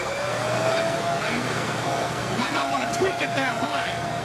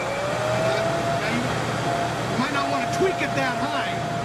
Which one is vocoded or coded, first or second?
first